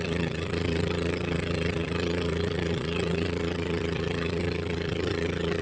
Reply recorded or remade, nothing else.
remade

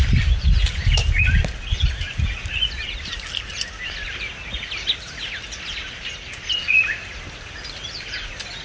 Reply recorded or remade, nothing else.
recorded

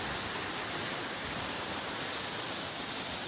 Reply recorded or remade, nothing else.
recorded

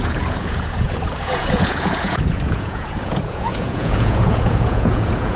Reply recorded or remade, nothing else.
remade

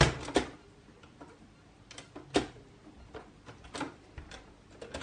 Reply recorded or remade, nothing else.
recorded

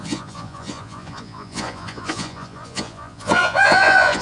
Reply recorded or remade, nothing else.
remade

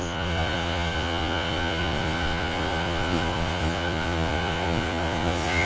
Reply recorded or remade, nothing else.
remade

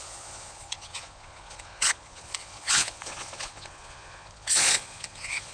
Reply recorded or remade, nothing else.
remade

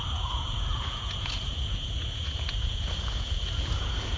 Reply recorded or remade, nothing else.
remade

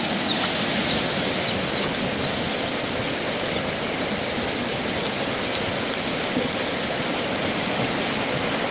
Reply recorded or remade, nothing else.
recorded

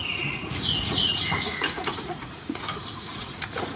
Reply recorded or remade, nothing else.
remade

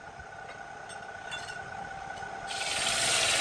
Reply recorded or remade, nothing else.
recorded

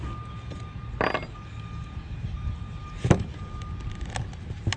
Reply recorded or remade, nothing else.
recorded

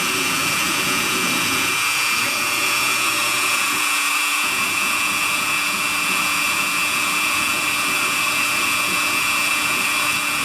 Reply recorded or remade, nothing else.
remade